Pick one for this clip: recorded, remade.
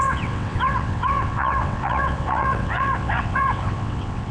remade